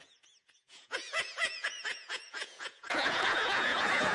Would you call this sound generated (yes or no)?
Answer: yes